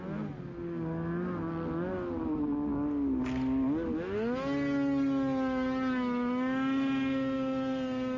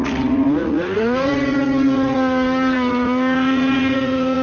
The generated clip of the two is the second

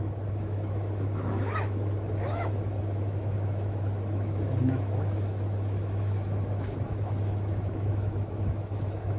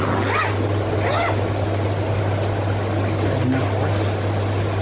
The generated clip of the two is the first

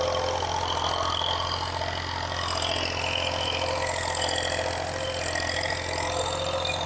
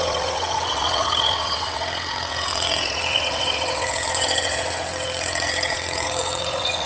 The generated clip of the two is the second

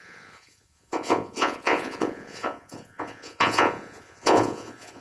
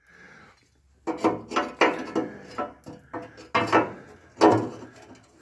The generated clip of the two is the first